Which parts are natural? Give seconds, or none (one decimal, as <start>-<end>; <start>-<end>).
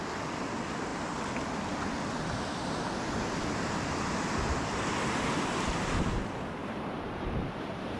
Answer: 0.0-6.6